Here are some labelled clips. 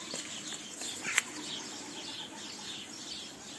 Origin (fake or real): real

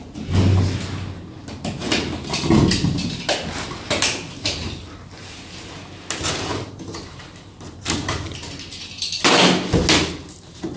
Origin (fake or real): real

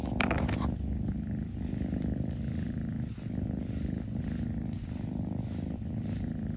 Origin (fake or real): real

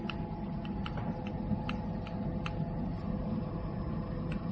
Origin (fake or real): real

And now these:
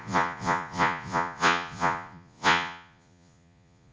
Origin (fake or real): fake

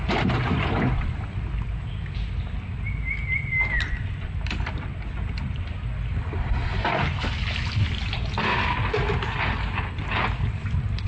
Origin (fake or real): real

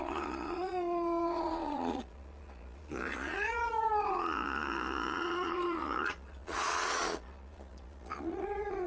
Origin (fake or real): fake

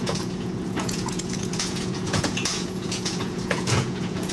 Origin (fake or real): fake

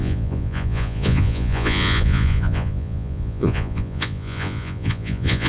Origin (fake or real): fake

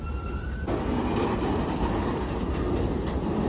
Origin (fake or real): real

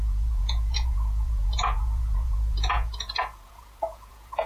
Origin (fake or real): fake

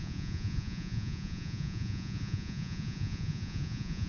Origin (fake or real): fake